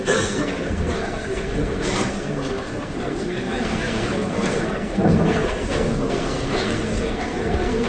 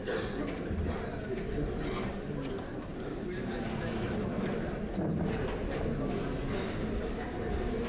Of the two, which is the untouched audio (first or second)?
second